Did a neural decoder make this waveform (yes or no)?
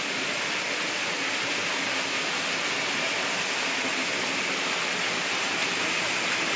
no